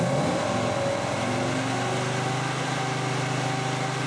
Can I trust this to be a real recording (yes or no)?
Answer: yes